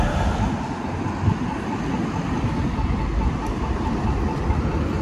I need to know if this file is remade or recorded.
recorded